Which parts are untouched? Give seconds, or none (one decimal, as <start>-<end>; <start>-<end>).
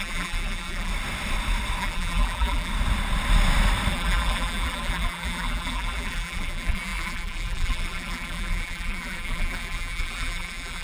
0.9-1.8; 2.7-3.9